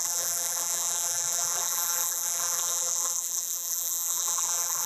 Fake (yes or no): yes